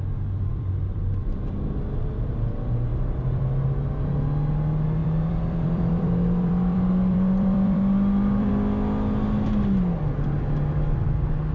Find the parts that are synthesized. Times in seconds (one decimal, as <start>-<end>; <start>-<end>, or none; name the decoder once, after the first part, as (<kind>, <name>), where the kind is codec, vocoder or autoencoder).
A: 0.5-1.4 (vocoder, BigVGAN v2); 2.9-3.4; 5.0-8.5